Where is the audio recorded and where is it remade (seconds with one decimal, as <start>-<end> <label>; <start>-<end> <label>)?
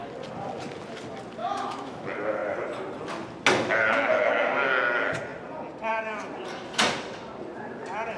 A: 0.0-1.4 recorded; 1.4-2.0 remade; 2.0-8.2 recorded